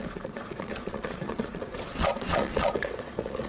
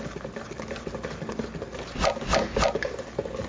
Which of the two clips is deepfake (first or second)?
first